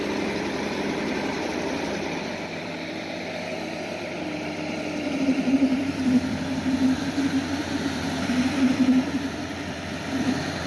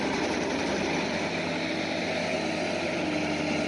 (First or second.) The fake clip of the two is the first